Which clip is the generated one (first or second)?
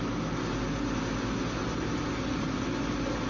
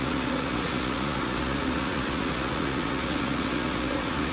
second